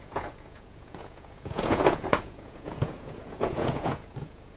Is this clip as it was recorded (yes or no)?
no